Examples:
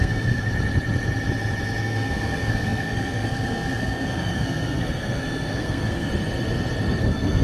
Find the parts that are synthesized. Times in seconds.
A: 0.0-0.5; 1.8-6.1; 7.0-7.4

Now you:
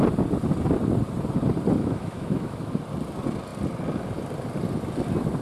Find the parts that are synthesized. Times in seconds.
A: 1.8-2.8

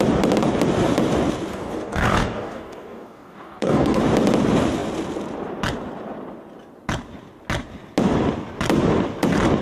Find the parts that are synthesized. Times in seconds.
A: 1.5-4.0

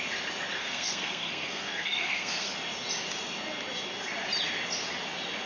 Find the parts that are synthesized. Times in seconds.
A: 0.6-2.5

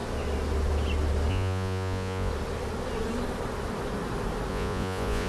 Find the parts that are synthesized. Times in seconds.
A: 1.3-2.3; 4.5-5.3

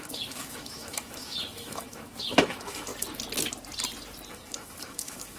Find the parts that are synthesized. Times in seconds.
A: 0.0-2.9; 4.3-5.4

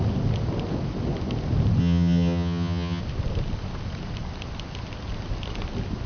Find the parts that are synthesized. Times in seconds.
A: 1.8-3.0